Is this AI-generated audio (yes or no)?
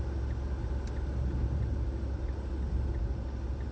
no